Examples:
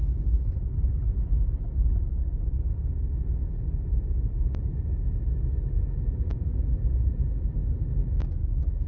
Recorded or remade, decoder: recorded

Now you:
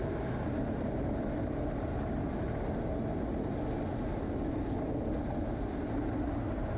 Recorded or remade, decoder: recorded